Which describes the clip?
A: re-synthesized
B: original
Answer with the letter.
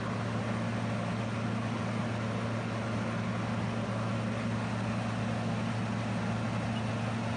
B